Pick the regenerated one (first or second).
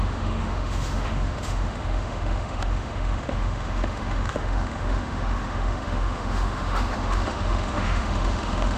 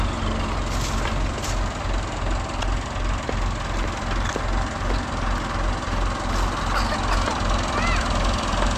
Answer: first